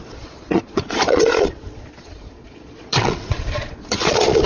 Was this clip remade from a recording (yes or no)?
yes